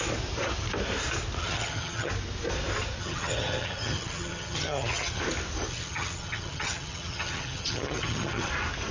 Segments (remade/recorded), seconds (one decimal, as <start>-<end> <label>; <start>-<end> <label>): 0.0-1.4 recorded; 1.4-2.1 remade; 2.1-3.0 recorded; 3.0-5.2 remade; 5.2-5.7 recorded; 5.7-8.5 remade; 8.5-8.9 recorded